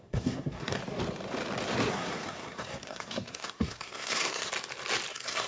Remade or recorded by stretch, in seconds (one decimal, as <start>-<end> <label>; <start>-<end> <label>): 0.0-0.8 remade; 0.8-1.9 recorded; 1.9-4.5 remade; 4.5-5.1 recorded; 5.1-5.5 remade